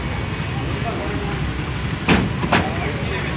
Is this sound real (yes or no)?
yes